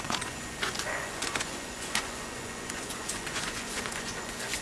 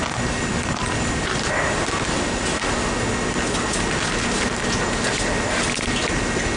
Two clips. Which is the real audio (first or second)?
second